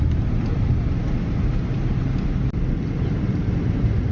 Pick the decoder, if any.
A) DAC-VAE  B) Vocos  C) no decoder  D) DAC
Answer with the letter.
C